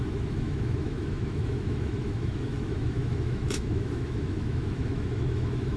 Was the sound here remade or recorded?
remade